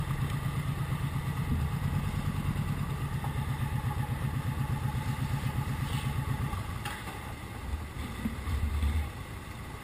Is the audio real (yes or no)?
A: yes